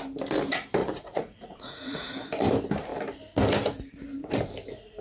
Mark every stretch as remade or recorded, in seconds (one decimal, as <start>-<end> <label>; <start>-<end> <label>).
0.0-0.8 recorded; 0.8-2.1 remade; 2.1-5.0 recorded

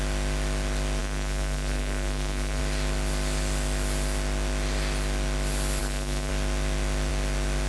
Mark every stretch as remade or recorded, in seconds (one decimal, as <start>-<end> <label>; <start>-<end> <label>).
0.0-1.0 recorded; 1.0-2.6 remade; 2.6-5.8 recorded; 5.8-6.3 remade; 6.3-7.7 recorded